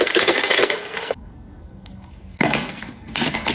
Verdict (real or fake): fake